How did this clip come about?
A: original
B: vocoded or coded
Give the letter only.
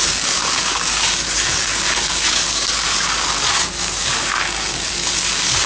B